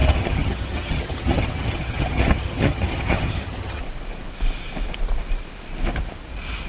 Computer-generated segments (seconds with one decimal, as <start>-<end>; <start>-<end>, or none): 0.0-3.8